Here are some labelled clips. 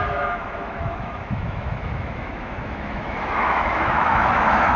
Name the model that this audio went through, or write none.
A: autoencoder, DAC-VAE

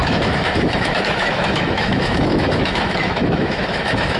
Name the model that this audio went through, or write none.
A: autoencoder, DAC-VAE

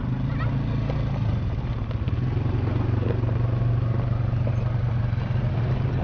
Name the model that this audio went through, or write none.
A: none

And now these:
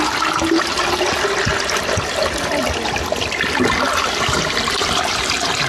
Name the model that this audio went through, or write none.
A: none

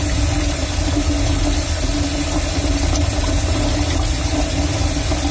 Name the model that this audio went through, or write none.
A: none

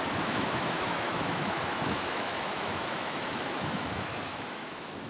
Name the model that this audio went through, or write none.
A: autoencoder, DAC-VAE